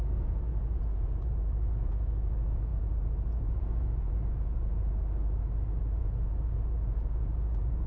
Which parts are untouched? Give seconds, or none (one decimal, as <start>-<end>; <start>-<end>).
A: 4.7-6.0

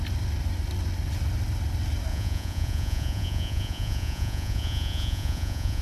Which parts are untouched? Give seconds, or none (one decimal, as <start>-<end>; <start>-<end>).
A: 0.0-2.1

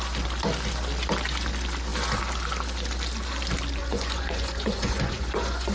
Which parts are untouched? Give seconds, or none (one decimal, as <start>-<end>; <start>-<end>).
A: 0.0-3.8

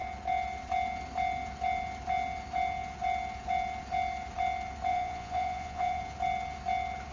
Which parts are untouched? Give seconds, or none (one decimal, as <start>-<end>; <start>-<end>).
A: 0.0-4.9; 6.0-7.1

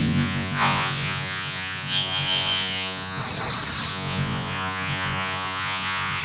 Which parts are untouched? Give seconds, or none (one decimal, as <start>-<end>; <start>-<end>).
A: 3.2-3.9

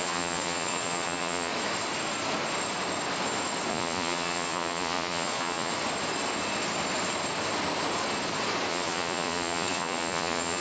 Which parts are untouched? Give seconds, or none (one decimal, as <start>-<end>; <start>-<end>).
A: 1.5-3.7; 5.7-8.7

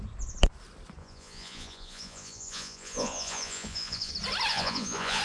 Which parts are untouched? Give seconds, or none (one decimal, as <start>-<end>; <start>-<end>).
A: 0.0-1.0; 4.1-4.5